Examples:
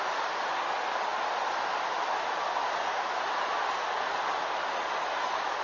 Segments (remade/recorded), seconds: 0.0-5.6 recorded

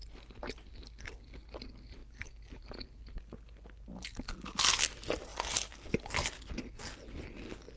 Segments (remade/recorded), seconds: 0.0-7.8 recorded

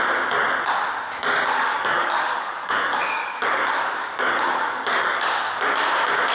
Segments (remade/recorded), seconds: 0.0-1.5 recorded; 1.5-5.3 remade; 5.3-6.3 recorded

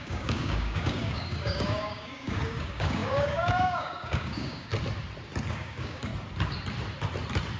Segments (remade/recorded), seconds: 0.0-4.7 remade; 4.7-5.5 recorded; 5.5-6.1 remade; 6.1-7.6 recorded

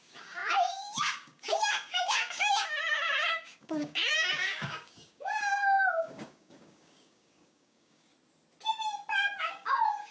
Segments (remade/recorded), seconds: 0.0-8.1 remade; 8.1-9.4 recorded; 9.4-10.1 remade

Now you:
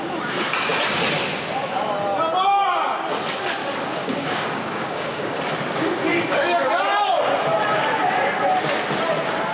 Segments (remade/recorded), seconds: 0.0-3.6 recorded; 3.6-5.4 remade; 5.4-6.1 recorded; 6.1-6.7 remade; 6.7-9.5 recorded